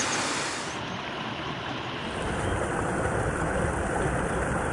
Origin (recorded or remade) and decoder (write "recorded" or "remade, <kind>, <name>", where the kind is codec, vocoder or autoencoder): recorded